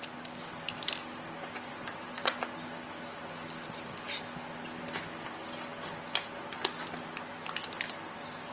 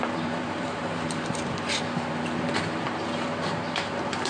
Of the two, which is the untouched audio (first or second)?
first